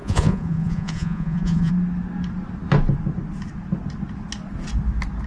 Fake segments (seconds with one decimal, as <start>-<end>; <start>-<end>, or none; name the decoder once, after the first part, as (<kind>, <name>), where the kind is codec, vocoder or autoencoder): 0.0-1.7 (vocoder, Vocos)